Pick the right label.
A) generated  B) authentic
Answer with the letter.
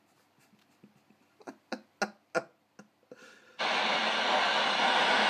B